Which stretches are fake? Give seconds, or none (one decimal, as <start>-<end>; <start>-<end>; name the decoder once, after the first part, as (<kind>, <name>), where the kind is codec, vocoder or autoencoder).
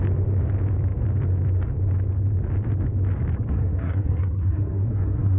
3.5-5.4 (codec, SNAC)